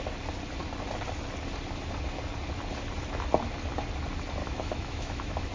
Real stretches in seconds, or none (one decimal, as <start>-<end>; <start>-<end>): 0.0-4.4